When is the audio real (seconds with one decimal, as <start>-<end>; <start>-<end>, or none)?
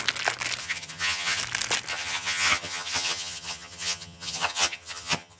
0.0-0.6; 1.4-1.9